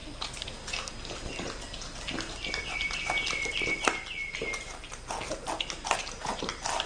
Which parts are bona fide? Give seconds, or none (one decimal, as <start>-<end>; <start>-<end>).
0.0-6.9